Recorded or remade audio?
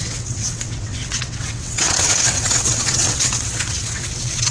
remade